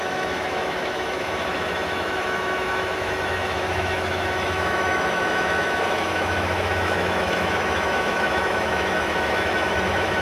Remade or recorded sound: remade